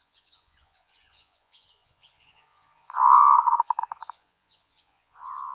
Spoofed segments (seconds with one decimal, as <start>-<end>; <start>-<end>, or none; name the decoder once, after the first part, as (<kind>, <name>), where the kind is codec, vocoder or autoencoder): 0.0-5.5 (vocoder, Vocos)